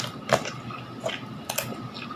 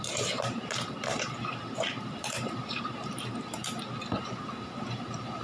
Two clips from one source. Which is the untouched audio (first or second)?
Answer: first